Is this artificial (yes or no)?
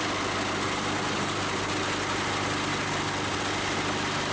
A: no